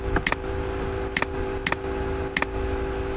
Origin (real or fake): real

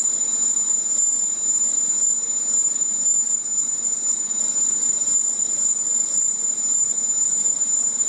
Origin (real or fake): real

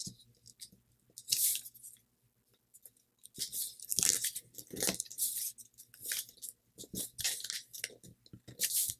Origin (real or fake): real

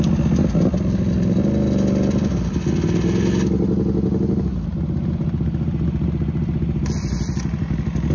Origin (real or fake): real